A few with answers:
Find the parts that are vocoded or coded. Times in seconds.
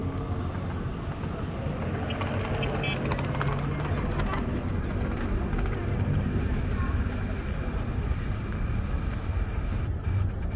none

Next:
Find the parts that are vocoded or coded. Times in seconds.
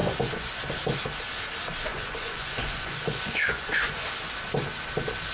0.0-0.6 (vocoder, Vocos); 1.9-3.9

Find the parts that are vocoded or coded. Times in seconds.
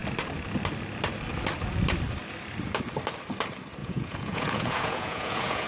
3.8-5.7 (vocoder, Vocos)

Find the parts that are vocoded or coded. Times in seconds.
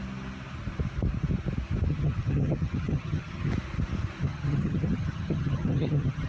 1.9-3.5 (vocoder, HiFi-GAN); 4.2-6.3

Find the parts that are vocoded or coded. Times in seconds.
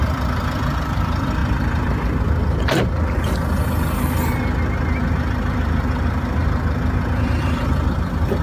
0.0-1.4 (vocoder, BigVGAN v2); 5.1-6.4; 7.4-8.4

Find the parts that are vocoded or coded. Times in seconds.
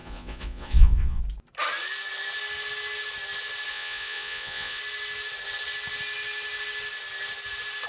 0.0-1.2 (vocoder, Vocos); 3.7-4.8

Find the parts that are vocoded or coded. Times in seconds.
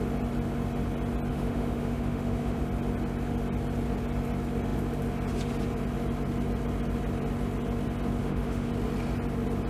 1.3-2.6 (autoencoder, DAC-VAE); 8.2-8.7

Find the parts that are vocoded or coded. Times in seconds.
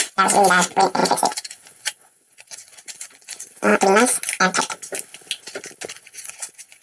0.0-3.7 (vocoder, Vocos); 5.9-6.8